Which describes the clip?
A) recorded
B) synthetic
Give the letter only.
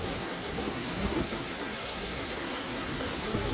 B